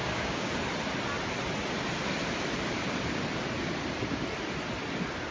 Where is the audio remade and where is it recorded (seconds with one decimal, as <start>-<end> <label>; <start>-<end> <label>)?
0.0-0.6 remade; 0.6-5.3 recorded